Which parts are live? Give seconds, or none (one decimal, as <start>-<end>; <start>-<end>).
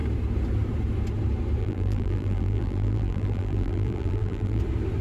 0.0-1.6; 4.6-5.0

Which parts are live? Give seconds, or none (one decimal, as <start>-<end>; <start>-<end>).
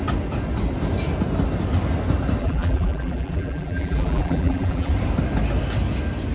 0.0-2.4; 4.9-6.3